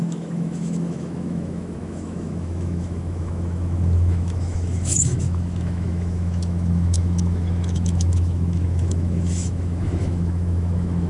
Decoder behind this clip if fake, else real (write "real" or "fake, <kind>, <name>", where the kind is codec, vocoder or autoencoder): fake, autoencoder, DAC-VAE